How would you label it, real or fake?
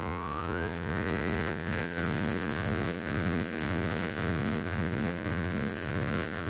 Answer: fake